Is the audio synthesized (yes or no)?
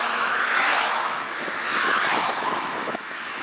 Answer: yes